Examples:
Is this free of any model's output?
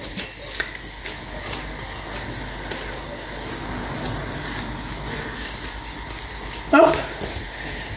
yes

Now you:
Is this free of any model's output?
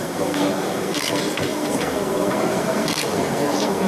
no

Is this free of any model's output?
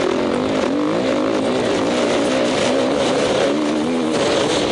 yes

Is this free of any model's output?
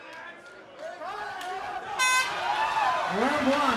yes